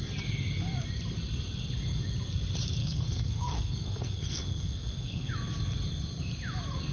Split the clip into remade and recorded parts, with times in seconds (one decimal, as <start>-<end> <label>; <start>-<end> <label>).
0.0-2.8 recorded; 2.8-5.3 remade; 5.3-6.9 recorded